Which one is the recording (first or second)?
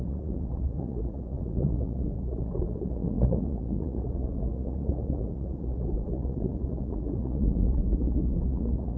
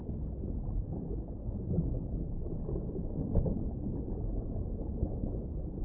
second